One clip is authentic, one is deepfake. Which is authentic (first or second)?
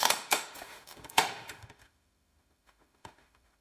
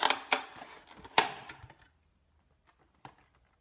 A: second